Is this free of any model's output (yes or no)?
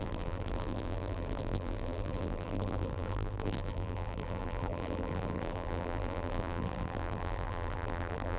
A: no